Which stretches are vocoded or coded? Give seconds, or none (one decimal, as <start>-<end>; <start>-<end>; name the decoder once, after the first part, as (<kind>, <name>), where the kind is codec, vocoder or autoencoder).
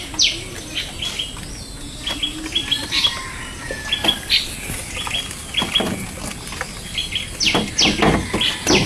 2.8-3.4 (vocoder, BigVGAN v2)